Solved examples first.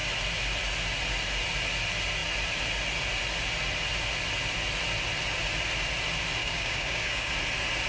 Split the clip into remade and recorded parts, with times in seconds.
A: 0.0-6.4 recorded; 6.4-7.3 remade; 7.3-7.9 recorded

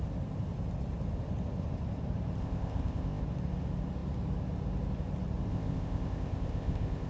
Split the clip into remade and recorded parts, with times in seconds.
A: 0.0-2.4 recorded; 2.4-3.2 remade; 3.2-5.5 recorded; 5.5-7.1 remade

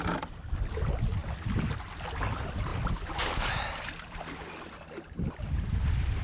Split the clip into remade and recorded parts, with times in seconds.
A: 0.0-1.2 remade; 1.2-2.2 recorded; 2.2-6.2 remade

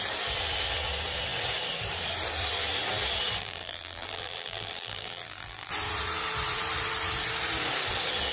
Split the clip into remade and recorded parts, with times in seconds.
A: 0.0-3.4 recorded; 3.4-5.7 remade; 5.7-8.3 recorded

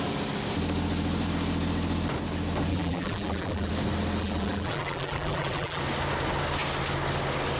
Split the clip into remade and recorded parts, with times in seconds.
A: 0.0-2.7 recorded; 2.7-3.7 remade; 3.7-4.2 recorded; 4.2-5.8 remade; 5.8-7.6 recorded

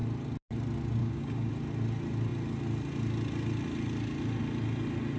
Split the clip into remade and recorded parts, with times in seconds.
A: 0.0-1.0 recorded; 1.0-1.5 remade; 1.5-5.2 recorded

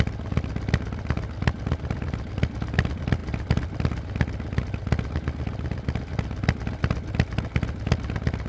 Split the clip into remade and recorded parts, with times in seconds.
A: 0.0-8.5 recorded